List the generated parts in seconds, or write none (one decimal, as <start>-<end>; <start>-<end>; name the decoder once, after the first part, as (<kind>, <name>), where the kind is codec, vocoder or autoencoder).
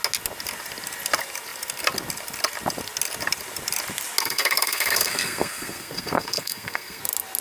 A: 4.2-7.0 (codec, SNAC)